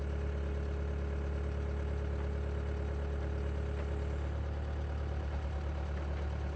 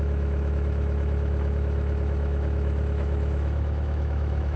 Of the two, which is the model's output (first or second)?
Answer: second